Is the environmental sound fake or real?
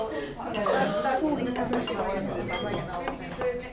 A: real